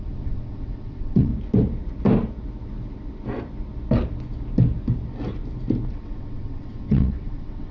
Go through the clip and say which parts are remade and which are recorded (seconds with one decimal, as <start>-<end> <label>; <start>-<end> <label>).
0.0-1.3 remade; 1.3-5.9 recorded; 5.9-7.7 remade